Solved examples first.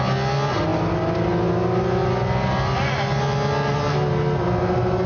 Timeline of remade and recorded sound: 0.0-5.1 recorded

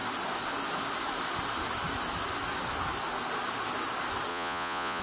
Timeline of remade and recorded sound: 0.0-4.3 recorded; 4.3-5.0 remade